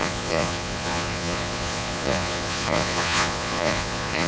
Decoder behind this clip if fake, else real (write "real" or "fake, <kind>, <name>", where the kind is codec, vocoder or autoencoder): fake, vocoder, Vocos